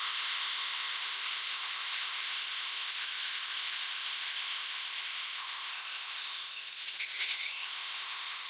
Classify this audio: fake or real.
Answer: fake